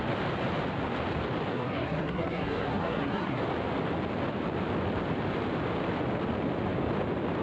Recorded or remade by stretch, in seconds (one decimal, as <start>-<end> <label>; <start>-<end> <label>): 0.0-1.5 recorded; 1.5-3.4 remade; 3.4-7.4 recorded

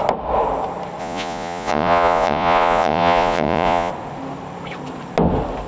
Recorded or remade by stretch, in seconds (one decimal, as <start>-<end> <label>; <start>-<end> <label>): 0.0-1.0 recorded; 1.0-3.9 remade; 3.9-5.7 recorded

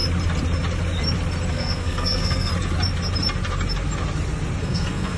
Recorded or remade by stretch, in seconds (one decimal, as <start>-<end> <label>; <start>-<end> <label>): 0.0-1.5 recorded; 1.5-2.5 remade; 2.5-4.6 recorded; 4.6-5.2 remade

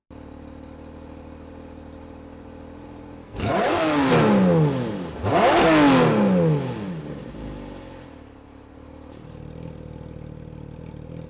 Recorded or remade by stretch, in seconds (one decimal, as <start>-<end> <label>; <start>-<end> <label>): 0.0-3.2 recorded; 3.2-4.1 remade; 4.1-11.3 recorded

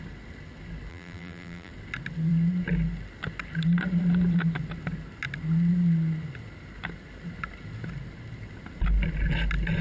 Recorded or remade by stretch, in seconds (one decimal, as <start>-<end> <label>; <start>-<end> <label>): 0.0-0.9 recorded; 0.9-1.7 remade; 1.7-9.8 recorded

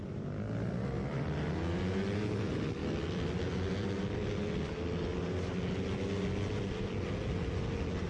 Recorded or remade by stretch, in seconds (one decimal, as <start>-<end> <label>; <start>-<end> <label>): 0.0-2.8 recorded; 2.8-3.3 remade; 3.3-8.1 recorded

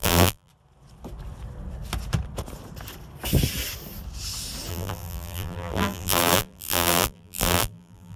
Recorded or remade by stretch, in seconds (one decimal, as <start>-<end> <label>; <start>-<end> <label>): 0.0-0.5 remade; 0.5-4.7 recorded; 4.7-8.2 remade